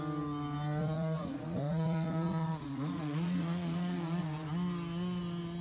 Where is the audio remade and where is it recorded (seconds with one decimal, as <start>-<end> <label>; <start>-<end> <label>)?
0.0-0.8 recorded; 0.8-4.2 remade; 4.2-5.6 recorded